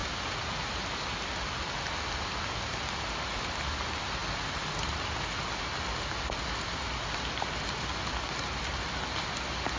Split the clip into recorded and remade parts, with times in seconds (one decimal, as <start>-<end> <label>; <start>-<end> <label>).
0.0-9.8 recorded